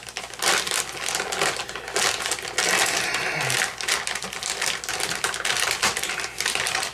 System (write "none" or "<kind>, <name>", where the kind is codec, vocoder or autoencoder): none